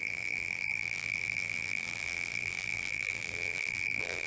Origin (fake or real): fake